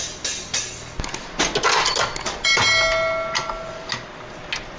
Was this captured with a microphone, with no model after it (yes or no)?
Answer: yes